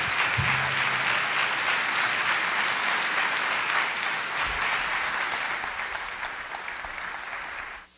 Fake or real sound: real